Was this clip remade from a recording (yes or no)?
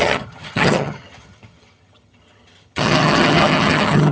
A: yes